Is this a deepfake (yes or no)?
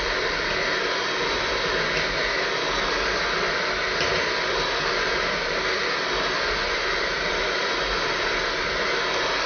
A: no